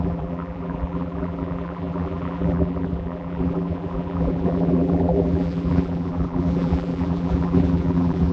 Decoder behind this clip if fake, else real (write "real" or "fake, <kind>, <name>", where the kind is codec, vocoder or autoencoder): fake, vocoder, BigVGAN v2